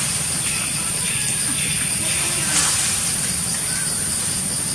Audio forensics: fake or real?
real